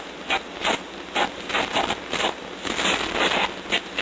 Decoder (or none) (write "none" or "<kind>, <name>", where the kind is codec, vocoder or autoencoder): none